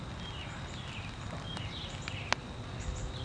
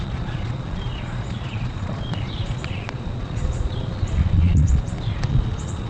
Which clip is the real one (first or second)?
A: first